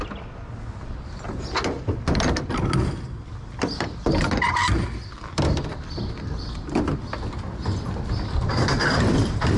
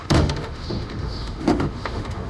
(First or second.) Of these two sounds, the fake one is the second